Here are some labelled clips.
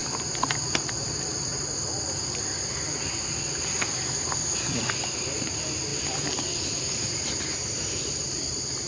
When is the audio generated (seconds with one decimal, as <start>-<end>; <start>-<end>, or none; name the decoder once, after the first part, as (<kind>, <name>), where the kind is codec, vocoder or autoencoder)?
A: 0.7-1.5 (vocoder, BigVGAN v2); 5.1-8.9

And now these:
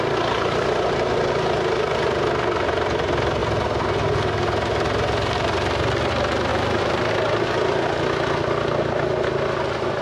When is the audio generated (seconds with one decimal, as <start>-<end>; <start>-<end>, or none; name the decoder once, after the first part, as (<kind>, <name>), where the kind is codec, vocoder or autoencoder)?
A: 6.5-7.1 (vocoder, BigVGAN v2)

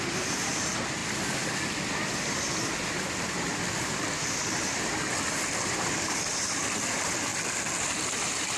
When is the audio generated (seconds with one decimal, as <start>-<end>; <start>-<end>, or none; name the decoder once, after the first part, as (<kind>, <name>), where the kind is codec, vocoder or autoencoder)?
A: 0.0-1.0 (vocoder, BigVGAN v2); 4.6-7.3; 8.1-8.6